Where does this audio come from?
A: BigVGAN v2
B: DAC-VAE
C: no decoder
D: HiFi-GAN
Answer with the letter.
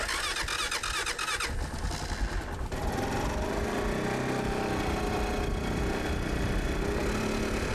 C